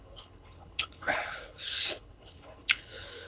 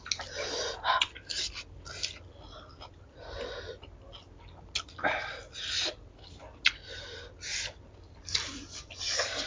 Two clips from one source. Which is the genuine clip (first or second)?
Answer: second